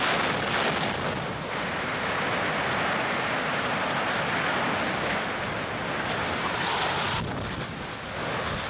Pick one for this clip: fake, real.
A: real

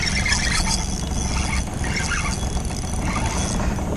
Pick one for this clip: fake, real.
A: real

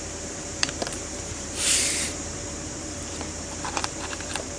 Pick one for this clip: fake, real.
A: fake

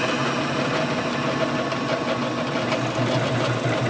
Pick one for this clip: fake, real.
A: real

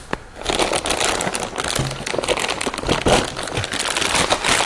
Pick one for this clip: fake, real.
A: real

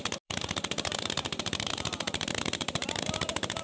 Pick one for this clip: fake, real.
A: fake